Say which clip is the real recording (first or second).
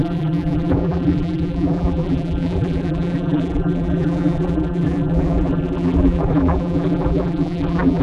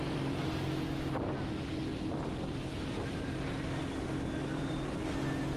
second